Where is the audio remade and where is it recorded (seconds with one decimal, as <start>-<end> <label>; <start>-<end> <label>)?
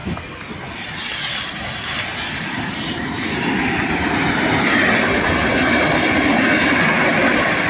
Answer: 0.0-2.5 recorded; 2.5-7.7 remade